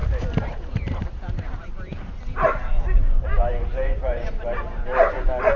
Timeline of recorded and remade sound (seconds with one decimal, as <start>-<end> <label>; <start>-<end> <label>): 0.0-1.7 remade; 1.7-3.3 recorded; 3.3-4.8 remade; 4.8-5.6 recorded